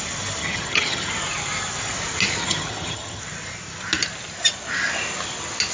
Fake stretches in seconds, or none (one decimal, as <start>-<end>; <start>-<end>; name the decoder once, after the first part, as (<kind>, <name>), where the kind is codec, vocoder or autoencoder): 0.4-1.1 (vocoder, HiFi-GAN); 2.4-3.2